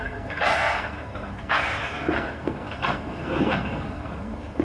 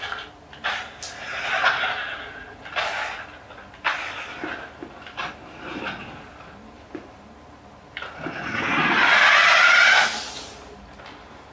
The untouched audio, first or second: second